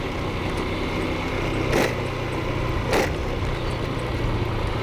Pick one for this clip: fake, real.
real